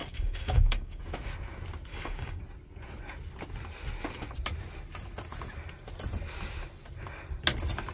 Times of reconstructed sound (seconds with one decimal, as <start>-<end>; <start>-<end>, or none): 0.0-1.0; 1.9-2.4